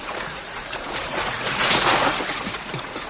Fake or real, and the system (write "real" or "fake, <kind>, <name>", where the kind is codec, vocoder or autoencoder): fake, vocoder, Vocos